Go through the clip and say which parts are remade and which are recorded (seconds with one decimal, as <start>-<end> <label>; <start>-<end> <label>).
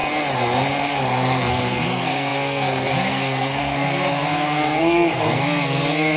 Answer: 0.0-0.8 recorded; 0.8-6.2 remade